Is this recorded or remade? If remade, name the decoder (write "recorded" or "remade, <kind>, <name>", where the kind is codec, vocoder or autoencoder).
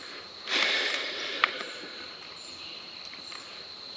remade, vocoder, BigVGAN v2